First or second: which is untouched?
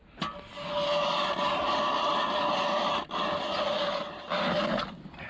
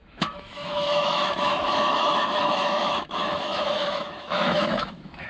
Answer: first